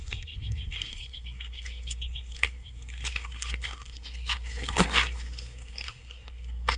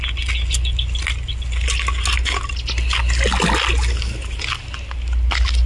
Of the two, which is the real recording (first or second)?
second